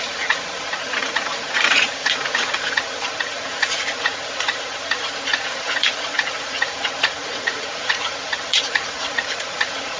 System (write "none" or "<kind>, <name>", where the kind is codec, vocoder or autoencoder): vocoder, Vocos